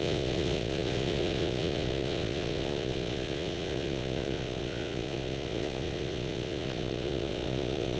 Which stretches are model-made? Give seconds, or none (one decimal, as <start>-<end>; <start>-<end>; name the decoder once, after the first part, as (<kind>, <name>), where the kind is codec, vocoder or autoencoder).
0.0-8.0 (vocoder, Vocos)